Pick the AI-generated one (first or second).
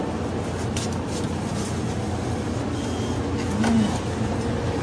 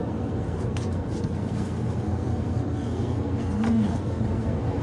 second